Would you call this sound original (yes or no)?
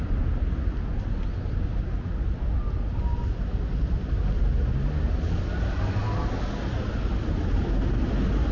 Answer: yes